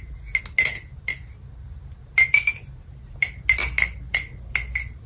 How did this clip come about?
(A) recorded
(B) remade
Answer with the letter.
A